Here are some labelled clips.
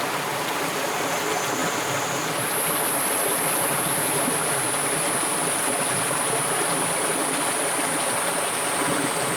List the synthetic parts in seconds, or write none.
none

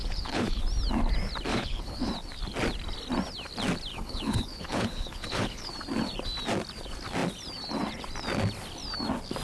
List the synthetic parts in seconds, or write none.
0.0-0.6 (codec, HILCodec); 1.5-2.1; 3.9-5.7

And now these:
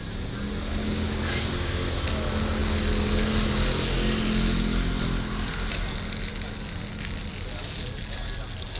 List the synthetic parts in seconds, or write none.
0.8-1.9 (codec, DAC)

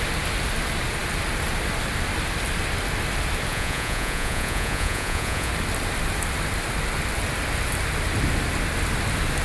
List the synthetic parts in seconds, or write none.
3.5-5.5 (vocoder, Vocos)

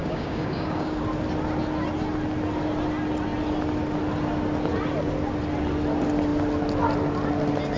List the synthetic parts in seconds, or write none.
0.0-1.0 (codec, DAC)

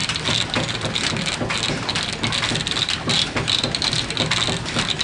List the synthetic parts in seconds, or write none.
none

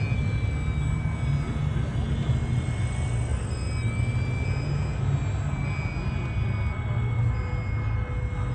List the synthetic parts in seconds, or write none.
none